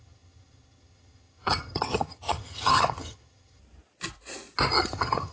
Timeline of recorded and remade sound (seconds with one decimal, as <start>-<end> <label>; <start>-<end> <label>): 0.0-3.6 remade; 3.6-4.7 recorded; 4.7-5.3 remade